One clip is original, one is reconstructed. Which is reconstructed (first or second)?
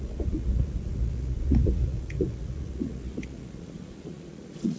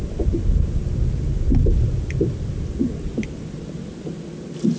first